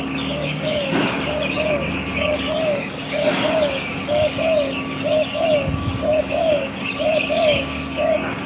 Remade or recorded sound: remade